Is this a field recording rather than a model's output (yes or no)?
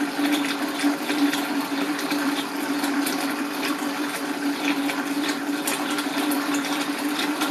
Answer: no